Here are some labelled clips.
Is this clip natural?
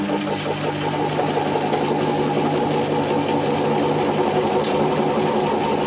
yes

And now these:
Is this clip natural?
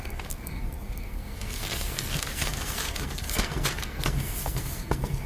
no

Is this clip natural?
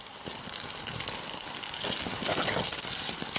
yes